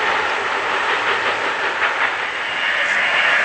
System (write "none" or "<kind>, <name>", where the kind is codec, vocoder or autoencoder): none